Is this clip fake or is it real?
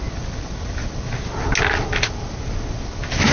real